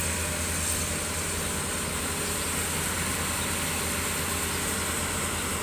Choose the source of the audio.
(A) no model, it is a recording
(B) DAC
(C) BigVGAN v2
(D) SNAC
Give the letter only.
A